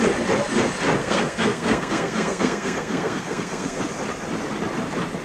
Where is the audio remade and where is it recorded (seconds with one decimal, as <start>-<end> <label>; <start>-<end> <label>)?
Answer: 0.0-1.0 recorded; 1.0-3.8 remade; 3.8-5.2 recorded